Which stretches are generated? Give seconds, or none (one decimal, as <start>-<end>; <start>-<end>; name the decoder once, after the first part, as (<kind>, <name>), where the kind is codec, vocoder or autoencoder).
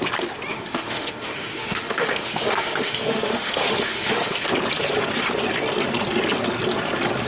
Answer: 0.5-4.5 (autoencoder, DAC-VAE)